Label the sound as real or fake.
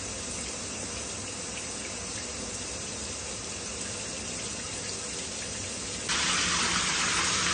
real